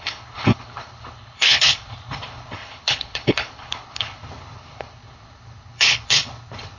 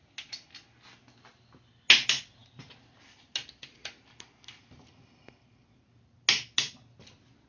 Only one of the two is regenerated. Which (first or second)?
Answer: first